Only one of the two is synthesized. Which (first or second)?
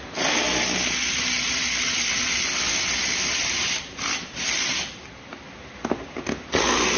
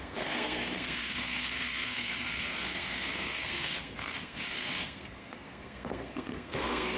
second